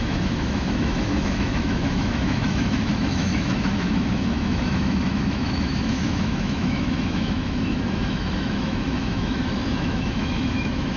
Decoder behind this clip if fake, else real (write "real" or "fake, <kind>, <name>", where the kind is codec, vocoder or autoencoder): fake, autoencoder, DAC-VAE